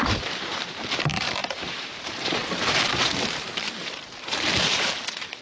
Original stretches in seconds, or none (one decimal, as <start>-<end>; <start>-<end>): none

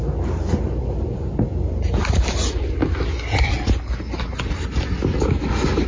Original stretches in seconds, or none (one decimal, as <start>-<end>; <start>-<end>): 0.0-5.9

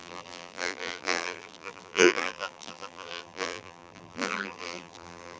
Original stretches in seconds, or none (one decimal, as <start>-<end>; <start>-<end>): none